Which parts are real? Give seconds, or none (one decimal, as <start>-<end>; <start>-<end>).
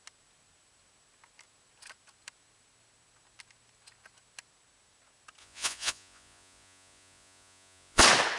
0.0-5.4; 8.0-8.4